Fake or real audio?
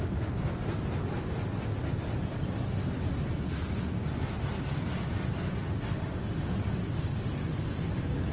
real